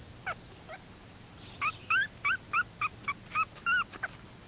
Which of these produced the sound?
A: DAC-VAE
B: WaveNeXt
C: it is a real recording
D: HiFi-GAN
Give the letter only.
C